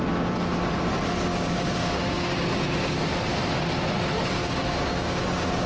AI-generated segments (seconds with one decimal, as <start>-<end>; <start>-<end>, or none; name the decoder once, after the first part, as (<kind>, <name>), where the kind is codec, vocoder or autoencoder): 1.3-3.0 (codec, DAC); 4.4-5.7